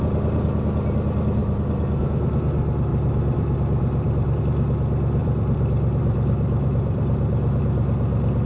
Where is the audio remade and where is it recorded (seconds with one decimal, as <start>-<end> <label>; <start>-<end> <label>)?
0.0-1.4 recorded; 1.4-2.0 remade; 2.0-2.9 recorded; 2.9-4.4 remade; 4.4-5.2 recorded; 5.2-7.6 remade; 7.6-8.5 recorded